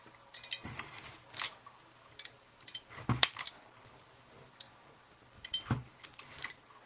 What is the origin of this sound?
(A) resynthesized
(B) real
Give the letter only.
B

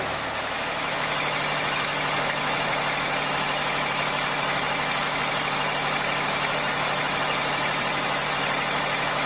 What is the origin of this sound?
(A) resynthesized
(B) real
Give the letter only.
A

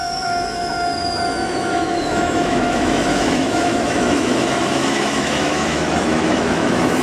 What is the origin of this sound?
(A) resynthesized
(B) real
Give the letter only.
A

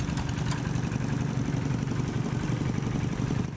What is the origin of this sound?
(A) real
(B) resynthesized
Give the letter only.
A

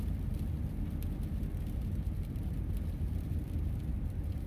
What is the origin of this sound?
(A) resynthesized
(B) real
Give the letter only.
B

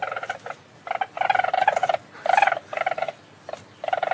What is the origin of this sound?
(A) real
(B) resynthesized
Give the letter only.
A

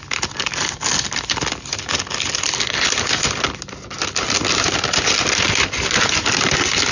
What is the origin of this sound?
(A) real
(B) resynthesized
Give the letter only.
A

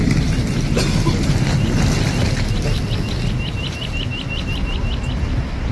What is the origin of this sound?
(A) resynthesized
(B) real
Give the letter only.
B